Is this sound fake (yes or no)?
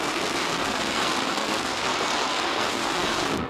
yes